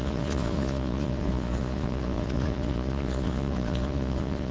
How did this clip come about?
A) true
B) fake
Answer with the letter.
B